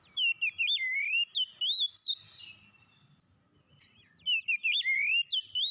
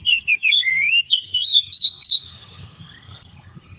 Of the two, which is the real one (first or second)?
first